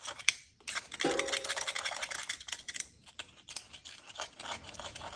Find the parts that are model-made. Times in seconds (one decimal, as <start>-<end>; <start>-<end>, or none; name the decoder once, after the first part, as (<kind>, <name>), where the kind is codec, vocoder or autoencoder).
0.0-5.2 (vocoder, BigVGAN v2)